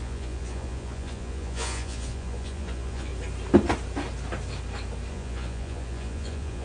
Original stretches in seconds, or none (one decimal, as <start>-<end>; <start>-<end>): 3.1-5.1